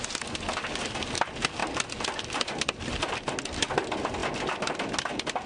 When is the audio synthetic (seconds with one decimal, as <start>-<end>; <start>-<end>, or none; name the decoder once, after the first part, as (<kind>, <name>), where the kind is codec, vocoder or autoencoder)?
none